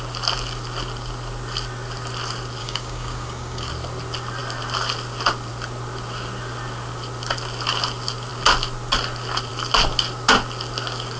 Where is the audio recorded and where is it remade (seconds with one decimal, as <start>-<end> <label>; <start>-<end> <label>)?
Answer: 0.0-2.6 recorded; 2.6-3.7 remade; 3.7-11.2 recorded